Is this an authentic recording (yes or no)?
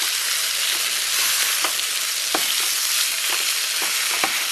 yes